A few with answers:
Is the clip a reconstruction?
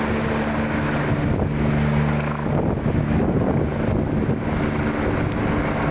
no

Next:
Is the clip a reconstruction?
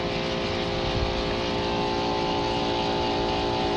no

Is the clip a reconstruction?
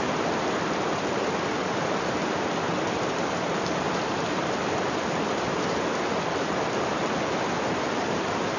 yes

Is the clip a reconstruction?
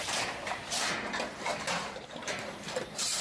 yes